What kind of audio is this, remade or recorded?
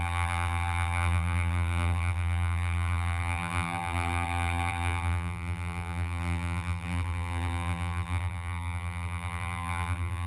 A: remade